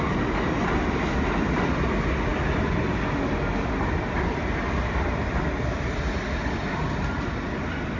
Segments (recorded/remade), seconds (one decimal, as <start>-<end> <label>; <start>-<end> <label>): 0.0-8.0 recorded